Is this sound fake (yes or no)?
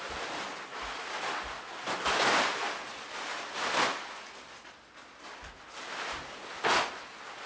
no